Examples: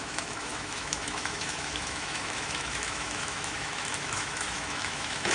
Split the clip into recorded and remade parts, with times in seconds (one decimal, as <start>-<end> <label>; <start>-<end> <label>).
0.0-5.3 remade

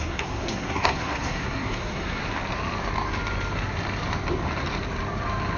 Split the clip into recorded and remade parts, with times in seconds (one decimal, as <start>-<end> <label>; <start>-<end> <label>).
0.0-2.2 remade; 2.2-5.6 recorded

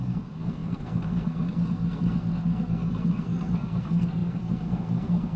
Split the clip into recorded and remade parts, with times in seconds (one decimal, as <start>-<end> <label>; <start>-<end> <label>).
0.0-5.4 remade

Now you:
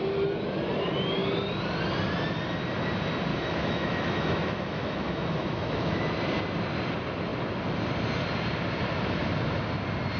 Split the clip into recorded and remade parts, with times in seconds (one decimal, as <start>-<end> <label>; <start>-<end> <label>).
0.0-3.3 recorded; 3.3-6.0 remade; 6.0-10.2 recorded

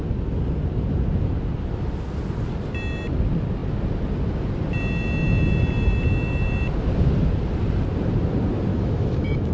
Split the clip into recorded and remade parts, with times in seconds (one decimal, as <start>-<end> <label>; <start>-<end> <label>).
0.0-8.7 recorded; 8.7-9.5 remade

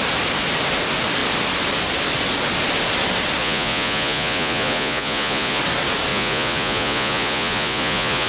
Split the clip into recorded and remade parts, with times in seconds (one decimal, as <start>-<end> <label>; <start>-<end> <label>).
0.0-3.4 recorded; 3.4-5.6 remade; 5.6-6.1 recorded; 6.1-8.3 remade

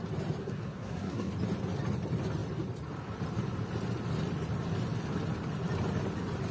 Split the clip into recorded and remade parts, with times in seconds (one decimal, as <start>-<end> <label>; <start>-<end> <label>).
0.0-0.4 recorded; 0.4-1.3 remade; 1.3-6.5 recorded